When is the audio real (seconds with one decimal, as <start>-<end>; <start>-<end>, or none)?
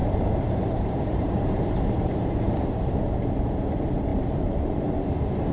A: 2.8-4.1